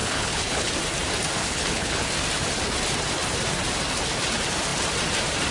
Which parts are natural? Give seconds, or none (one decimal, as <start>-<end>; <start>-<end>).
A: 0.7-1.4; 2.1-5.5